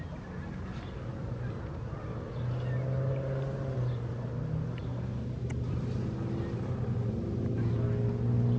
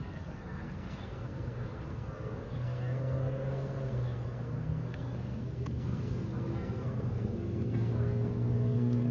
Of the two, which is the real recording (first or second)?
first